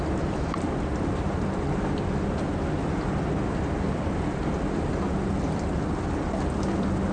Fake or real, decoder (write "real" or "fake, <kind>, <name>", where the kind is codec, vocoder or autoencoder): real